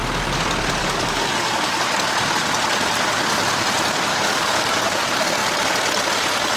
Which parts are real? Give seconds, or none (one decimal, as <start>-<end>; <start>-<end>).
0.0-0.8; 1.8-4.1; 5.0-6.6